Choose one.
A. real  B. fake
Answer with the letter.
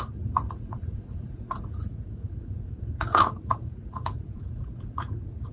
B